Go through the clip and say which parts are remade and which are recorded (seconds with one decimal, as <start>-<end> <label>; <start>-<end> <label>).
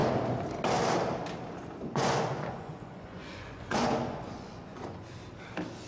0.0-1.6 recorded; 1.6-5.1 remade; 5.1-5.9 recorded